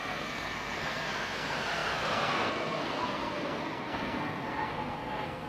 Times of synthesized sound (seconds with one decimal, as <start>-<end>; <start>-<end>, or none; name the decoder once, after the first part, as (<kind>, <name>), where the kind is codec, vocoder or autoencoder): 0.0-5.5 (codec, SNAC)